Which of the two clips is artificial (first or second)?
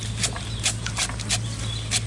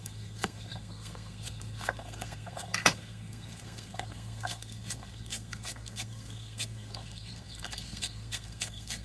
second